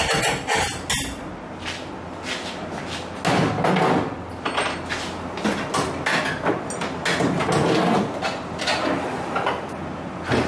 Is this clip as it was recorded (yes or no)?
yes